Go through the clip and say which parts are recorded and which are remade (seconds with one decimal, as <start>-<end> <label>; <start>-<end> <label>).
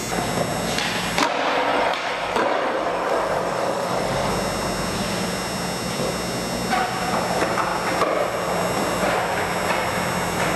0.0-1.7 recorded; 1.7-4.3 remade; 4.3-10.6 recorded